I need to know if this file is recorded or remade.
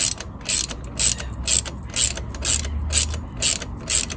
recorded